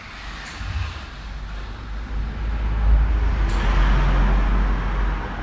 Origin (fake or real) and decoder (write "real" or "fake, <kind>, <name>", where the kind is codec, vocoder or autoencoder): real